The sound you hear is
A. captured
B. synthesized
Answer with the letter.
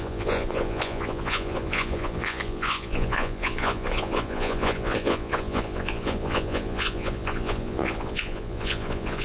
B